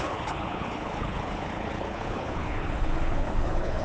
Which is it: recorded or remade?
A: remade